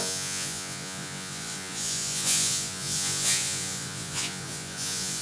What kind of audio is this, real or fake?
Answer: fake